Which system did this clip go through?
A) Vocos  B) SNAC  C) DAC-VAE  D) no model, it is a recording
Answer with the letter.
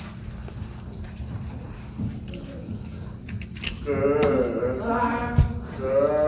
D